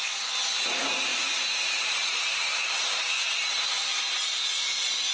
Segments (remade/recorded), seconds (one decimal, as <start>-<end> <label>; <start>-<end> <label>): 0.0-1.1 recorded; 1.1-4.2 remade; 4.2-5.1 recorded